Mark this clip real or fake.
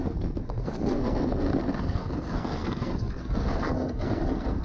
fake